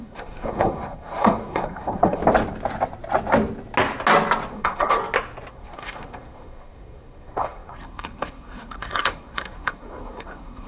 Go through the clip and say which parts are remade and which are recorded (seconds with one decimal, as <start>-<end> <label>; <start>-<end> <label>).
0.0-2.2 remade; 2.2-4.5 recorded; 4.5-5.0 remade; 5.0-5.5 recorded; 5.5-10.7 remade